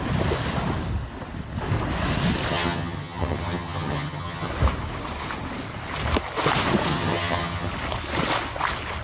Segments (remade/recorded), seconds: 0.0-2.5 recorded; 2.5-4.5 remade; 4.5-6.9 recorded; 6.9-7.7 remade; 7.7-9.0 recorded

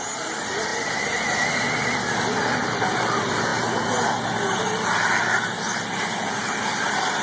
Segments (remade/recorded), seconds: 0.0-7.2 recorded